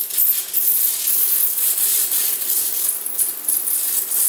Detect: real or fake real